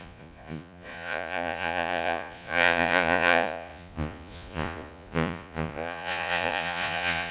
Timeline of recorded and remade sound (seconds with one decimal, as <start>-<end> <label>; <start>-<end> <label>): 0.0-7.3 remade